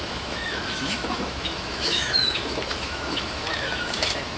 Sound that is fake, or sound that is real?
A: fake